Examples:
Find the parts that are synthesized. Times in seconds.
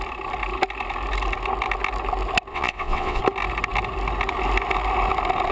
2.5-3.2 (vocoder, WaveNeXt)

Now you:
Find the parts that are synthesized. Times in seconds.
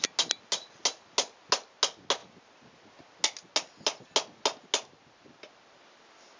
none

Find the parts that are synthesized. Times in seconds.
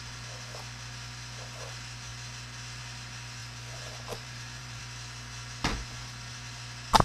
3.4-4.8 (vocoder, BigVGAN v2)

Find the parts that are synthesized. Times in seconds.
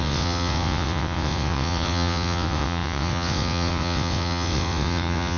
0.0-5.4 (vocoder, WaveNeXt)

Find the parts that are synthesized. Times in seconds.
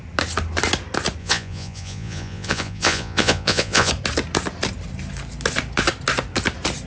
1.2-3.9 (vocoder, Vocos)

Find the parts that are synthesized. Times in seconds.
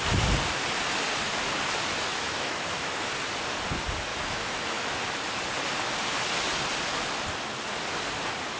2.1-3.1 (autoencoder, DAC-VAE); 4.1-4.9